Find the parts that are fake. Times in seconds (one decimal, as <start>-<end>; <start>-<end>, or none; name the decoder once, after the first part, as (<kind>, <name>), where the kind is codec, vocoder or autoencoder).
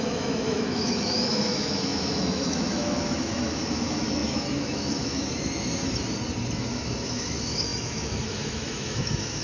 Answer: 0.0-5.8 (autoencoder, DAC-VAE); 6.6-9.4